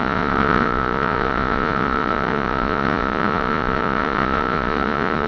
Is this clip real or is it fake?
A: fake